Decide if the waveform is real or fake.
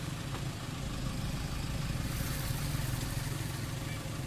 real